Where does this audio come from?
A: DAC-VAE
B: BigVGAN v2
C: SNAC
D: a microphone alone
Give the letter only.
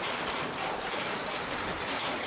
B